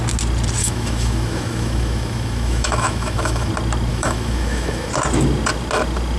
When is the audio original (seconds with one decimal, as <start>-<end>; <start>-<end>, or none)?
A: 0.0-0.6; 3.5-3.9; 4.9-6.2